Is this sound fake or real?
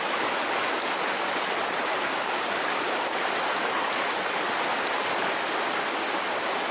real